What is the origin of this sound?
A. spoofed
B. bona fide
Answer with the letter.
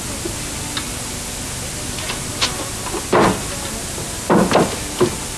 B